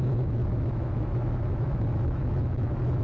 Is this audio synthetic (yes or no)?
yes